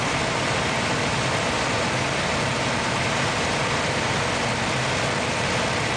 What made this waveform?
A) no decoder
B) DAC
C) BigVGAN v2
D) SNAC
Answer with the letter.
A